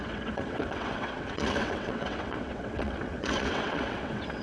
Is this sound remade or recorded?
remade